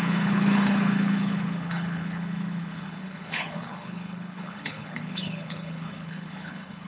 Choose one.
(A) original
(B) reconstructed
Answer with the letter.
B